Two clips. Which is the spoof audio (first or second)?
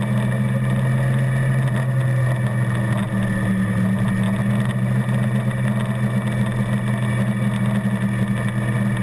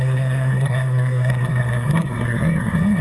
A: second